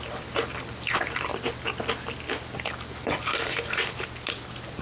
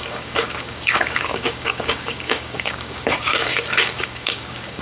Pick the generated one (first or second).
second